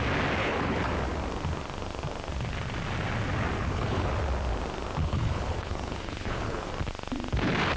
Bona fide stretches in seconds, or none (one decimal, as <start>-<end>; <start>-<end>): 0.0-0.4; 0.9-3.6; 4.1-5.0; 6.7-7.8